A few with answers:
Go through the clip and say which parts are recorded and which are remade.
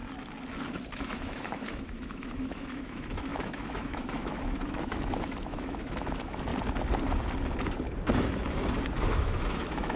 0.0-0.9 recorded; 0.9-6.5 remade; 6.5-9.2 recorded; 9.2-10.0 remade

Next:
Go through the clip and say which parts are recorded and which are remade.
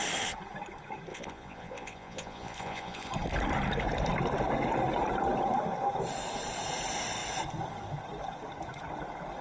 0.0-1.1 recorded; 1.1-3.1 remade; 3.1-9.4 recorded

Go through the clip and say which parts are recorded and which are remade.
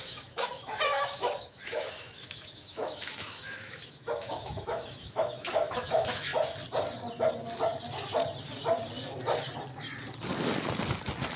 0.0-6.3 remade; 6.3-11.4 recorded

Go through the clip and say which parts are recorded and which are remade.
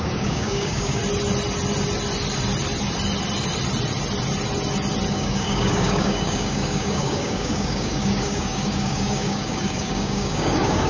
0.0-1.0 remade; 1.0-5.1 recorded; 5.1-10.9 remade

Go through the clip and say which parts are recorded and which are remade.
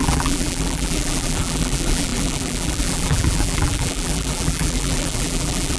0.0-5.8 remade